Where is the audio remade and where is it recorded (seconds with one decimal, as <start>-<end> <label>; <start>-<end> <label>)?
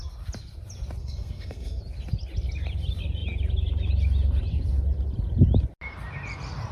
0.0-1.0 recorded; 1.0-1.8 remade; 1.8-6.7 recorded